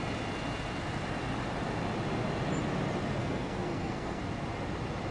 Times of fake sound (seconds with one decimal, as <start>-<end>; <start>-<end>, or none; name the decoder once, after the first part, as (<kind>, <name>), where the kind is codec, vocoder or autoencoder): 3.2-4.2 (codec, SNAC)